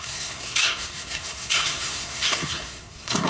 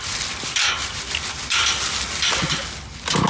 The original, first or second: second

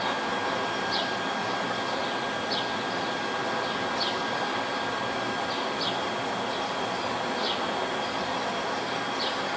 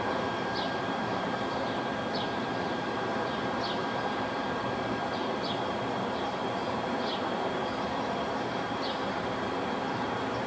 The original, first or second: first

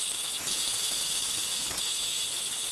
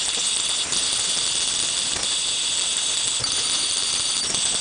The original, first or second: second